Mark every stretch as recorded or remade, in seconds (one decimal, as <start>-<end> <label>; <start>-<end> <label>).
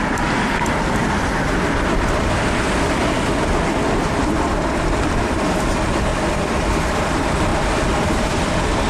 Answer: 0.0-6.1 remade; 6.1-6.9 recorded; 6.9-7.5 remade; 7.5-8.1 recorded; 8.1-8.9 remade